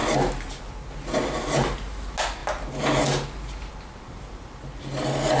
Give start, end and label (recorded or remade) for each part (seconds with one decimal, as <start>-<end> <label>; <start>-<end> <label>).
0.0-5.4 recorded

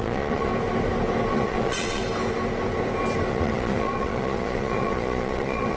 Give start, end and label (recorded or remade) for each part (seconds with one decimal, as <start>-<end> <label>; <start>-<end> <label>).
0.0-0.5 remade; 0.5-1.3 recorded; 1.3-2.0 remade; 2.0-3.3 recorded; 3.3-5.8 remade

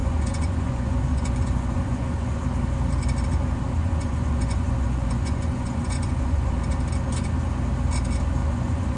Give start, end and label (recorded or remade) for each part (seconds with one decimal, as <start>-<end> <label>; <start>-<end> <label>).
0.0-2.4 remade; 2.4-3.8 recorded; 3.8-6.5 remade; 6.5-8.4 recorded; 8.4-9.0 remade

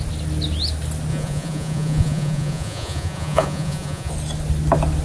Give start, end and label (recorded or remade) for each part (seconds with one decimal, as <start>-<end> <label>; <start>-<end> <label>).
0.0-1.1 recorded; 1.1-4.1 remade; 4.1-5.0 recorded

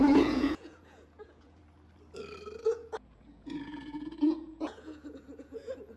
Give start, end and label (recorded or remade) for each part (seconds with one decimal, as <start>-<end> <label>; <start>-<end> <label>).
0.0-1.6 remade; 1.6-2.6 recorded; 2.6-6.0 remade

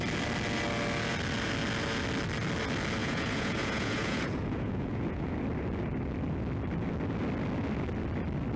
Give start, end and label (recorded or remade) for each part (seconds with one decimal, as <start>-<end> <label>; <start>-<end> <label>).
0.0-3.0 recorded; 3.0-5.3 remade; 5.3-8.6 recorded

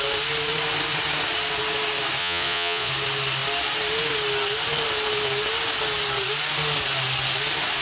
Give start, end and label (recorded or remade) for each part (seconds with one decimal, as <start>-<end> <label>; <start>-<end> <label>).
0.0-2.2 recorded; 2.2-2.9 remade; 2.9-7.8 recorded

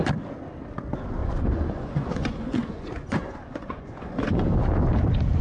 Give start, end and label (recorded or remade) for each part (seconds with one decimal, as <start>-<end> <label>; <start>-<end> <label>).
0.0-1.2 recorded; 1.2-4.4 remade; 4.4-5.4 recorded